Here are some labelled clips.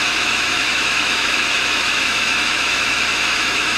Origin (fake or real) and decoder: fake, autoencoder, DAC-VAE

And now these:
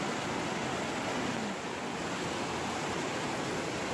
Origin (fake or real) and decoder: real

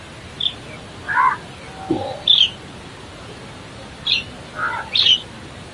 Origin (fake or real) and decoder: real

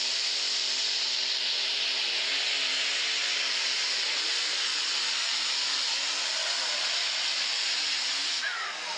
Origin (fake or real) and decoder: real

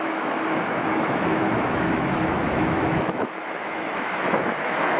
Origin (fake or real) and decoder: fake, autoencoder, DAC-VAE